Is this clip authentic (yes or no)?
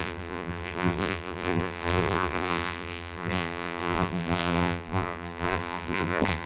no